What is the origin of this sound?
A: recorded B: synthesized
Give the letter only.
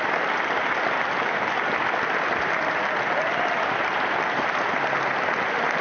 A